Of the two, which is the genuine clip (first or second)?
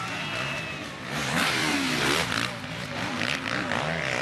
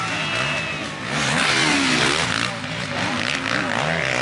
second